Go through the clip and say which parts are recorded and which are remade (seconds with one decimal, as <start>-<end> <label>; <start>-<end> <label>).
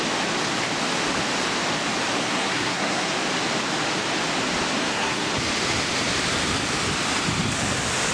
0.0-2.2 recorded; 2.2-3.1 remade; 3.1-4.8 recorded; 4.8-5.3 remade; 5.3-8.1 recorded